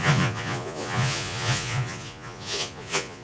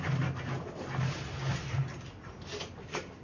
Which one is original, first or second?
second